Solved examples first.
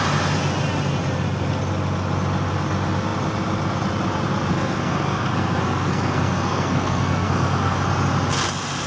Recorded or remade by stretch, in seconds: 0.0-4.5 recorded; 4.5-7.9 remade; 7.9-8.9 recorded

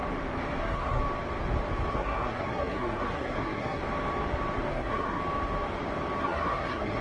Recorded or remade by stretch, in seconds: 0.0-0.6 recorded; 0.6-1.0 remade; 1.0-1.9 recorded; 1.9-3.8 remade; 3.8-4.7 recorded; 4.7-5.2 remade; 5.2-6.2 recorded; 6.2-7.0 remade

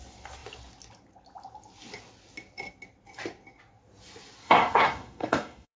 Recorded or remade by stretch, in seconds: 0.0-4.4 recorded; 4.4-5.8 remade

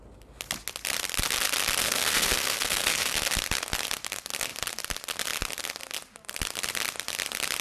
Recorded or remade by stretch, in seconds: 0.0-1.8 recorded; 1.8-3.1 remade; 3.1-7.6 recorded

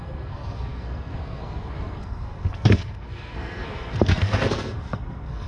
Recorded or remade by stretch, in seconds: 0.0-5.5 remade